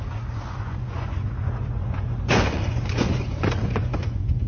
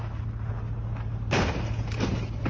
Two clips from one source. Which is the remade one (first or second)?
first